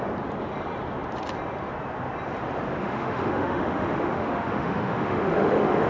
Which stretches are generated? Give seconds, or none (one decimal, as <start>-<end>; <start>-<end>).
2.8-5.9